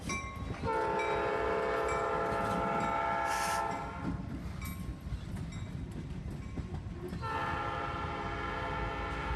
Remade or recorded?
recorded